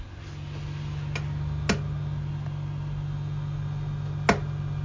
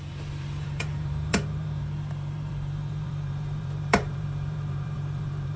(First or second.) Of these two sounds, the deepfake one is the second